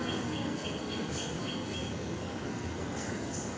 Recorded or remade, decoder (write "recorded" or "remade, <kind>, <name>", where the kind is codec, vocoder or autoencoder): remade, codec, SNAC